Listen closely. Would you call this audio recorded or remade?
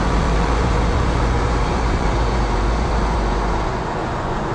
remade